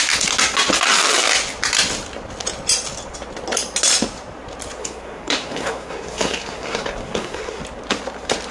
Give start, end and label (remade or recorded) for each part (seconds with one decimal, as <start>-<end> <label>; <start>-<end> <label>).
0.0-4.8 recorded; 4.8-7.6 remade; 7.6-8.5 recorded